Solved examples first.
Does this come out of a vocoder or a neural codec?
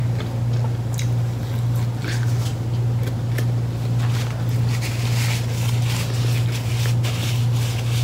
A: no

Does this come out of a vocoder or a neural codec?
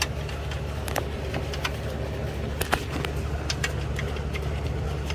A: no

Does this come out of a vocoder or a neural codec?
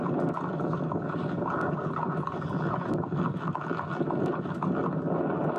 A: no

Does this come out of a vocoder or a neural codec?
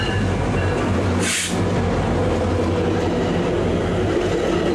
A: no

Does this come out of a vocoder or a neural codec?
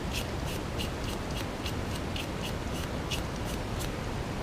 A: no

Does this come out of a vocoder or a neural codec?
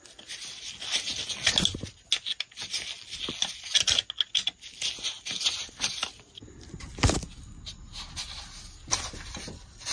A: no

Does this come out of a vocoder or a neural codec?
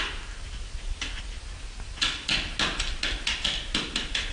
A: no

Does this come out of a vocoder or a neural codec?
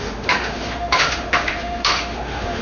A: yes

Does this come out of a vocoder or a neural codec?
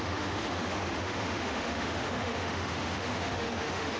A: yes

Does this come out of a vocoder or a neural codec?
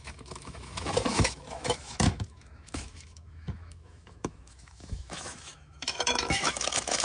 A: yes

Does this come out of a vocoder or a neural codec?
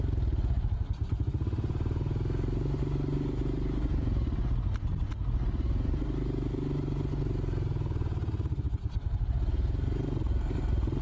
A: no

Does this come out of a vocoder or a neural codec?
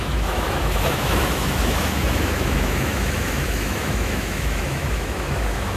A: yes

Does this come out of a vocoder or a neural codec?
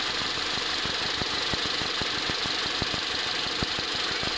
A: no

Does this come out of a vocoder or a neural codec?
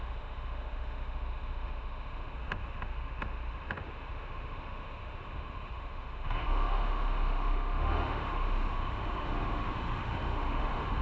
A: yes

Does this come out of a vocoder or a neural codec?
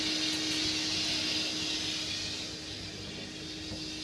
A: no